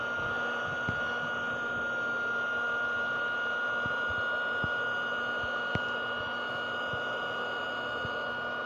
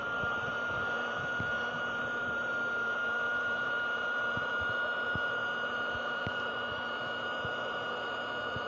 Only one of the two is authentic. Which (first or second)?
first